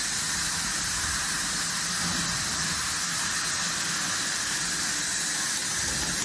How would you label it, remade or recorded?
recorded